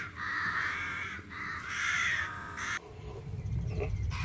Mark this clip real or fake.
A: fake